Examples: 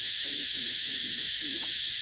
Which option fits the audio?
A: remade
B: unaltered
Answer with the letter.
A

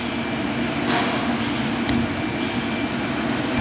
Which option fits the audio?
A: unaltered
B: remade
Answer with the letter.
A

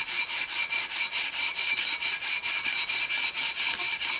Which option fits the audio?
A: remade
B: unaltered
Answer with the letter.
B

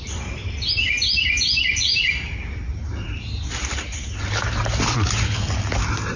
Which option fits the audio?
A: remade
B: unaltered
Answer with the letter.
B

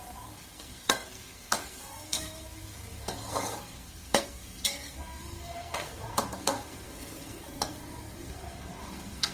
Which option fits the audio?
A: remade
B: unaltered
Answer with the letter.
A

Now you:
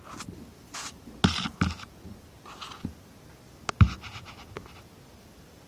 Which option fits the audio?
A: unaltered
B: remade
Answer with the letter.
A